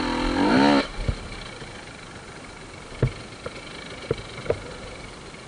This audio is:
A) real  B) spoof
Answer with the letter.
A